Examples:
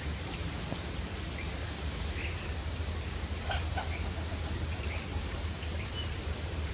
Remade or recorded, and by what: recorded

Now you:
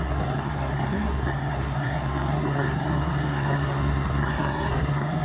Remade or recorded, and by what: remade, codec, SNAC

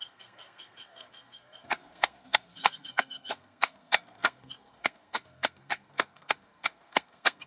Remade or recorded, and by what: remade, codec, SNAC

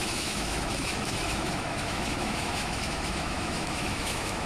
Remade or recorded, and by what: remade, autoencoder, DAC-VAE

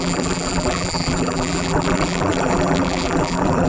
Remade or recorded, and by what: remade, vocoder, BigVGAN v2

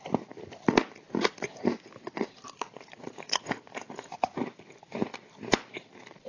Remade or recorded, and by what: recorded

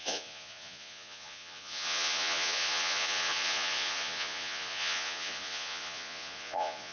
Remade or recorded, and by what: remade, vocoder, Vocos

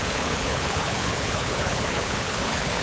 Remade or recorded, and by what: remade, codec, HILCodec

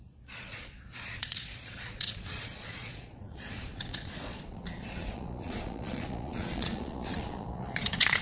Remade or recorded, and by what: remade, vocoder, Vocos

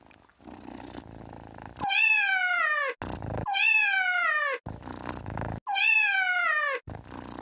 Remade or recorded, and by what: recorded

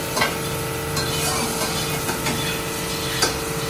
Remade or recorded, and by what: recorded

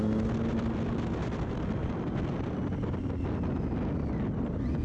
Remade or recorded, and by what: recorded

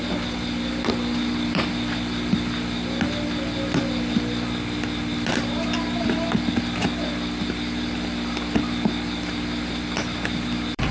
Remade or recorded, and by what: remade, vocoder, BigVGAN v2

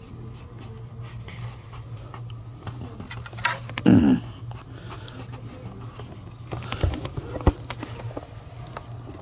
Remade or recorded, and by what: recorded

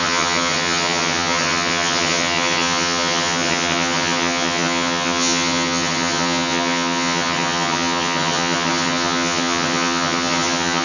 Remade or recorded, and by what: remade, vocoder, HiFi-GAN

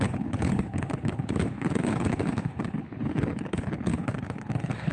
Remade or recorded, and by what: remade, codec, HILCodec